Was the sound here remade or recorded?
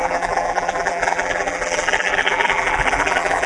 remade